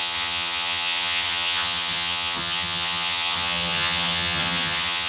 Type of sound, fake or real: fake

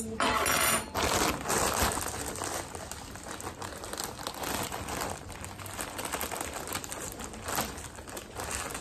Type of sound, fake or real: real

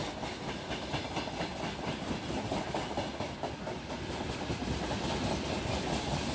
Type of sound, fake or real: real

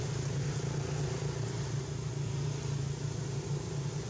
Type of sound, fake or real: real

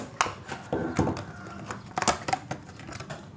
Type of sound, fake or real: real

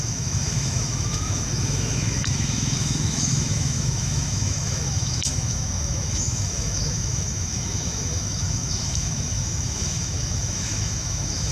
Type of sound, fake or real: fake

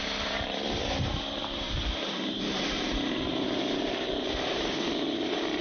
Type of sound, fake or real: fake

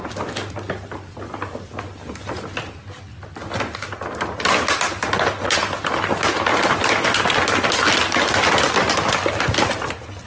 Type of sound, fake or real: real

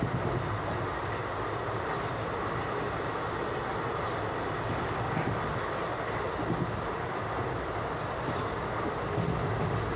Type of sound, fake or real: real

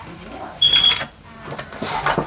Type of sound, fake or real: real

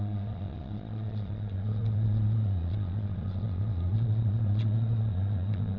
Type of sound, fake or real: fake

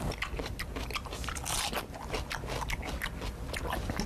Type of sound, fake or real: real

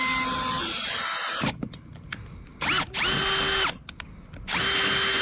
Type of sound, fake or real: real